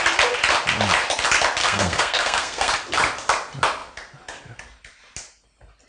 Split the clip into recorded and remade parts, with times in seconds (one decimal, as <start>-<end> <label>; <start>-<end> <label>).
0.0-1.6 recorded; 1.6-2.7 remade; 2.7-5.9 recorded